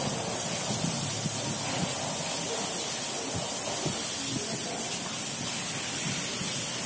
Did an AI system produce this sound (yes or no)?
no